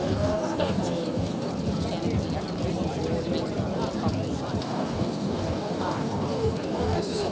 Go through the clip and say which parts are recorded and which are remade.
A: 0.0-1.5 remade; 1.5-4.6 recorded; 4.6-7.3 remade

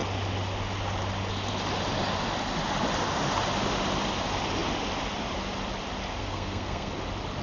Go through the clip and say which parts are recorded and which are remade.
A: 0.0-6.2 recorded; 6.2-6.9 remade; 6.9-7.4 recorded